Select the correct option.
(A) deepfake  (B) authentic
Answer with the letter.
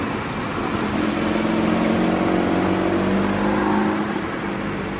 B